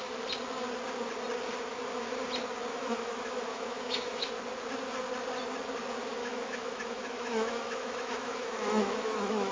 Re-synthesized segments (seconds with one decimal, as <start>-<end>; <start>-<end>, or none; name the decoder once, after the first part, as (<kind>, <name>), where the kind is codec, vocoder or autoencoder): 2.7-4.3 (autoencoder, DAC-VAE); 6.2-9.5